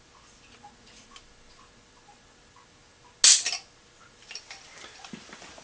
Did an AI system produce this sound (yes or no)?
no